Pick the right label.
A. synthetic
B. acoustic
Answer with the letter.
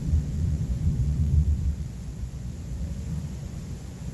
A